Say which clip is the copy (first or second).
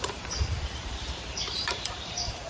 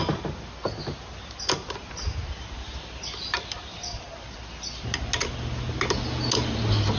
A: first